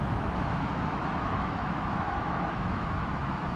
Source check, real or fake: fake